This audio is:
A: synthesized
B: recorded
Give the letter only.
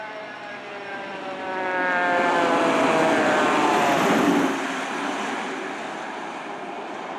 A